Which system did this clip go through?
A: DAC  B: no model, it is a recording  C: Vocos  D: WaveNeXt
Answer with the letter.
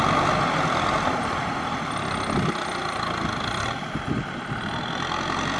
B